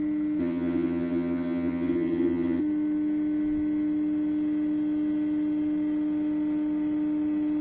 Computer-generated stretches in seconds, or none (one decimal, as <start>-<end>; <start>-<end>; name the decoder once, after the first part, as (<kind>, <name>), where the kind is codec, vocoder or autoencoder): 0.4-2.6 (vocoder, HiFi-GAN)